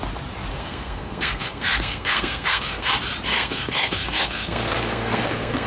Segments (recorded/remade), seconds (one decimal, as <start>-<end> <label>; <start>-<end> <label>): 0.0-0.5 recorded; 0.5-2.9 remade; 2.9-3.3 recorded; 3.3-5.7 remade